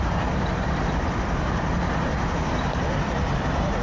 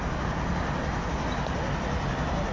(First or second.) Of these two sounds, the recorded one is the second